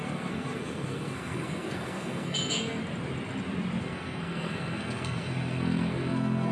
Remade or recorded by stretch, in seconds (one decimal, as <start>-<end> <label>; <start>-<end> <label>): 0.0-2.8 remade; 2.8-3.8 recorded; 3.8-6.5 remade